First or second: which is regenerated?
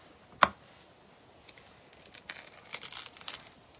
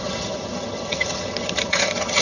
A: second